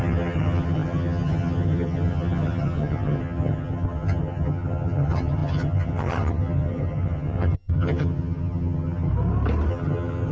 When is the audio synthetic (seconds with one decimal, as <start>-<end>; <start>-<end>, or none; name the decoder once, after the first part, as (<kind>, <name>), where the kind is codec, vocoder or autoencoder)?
0.0-9.1 (vocoder, HiFi-GAN); 9.7-10.3